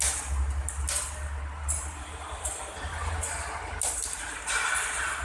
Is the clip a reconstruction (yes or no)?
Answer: no